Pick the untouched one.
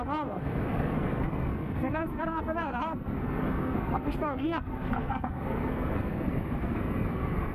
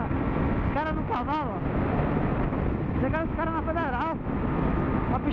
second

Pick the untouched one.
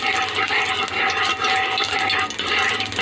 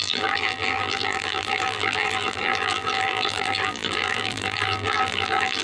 first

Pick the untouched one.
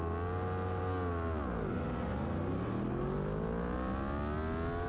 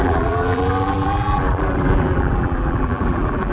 first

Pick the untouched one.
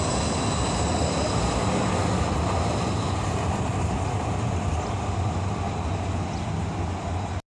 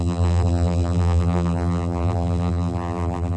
first